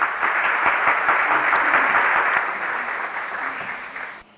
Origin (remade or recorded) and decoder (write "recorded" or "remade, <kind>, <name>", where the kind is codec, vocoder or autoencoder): recorded